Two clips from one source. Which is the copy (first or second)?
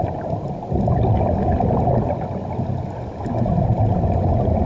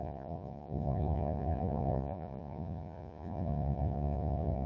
second